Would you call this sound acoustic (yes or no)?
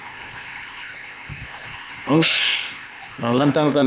no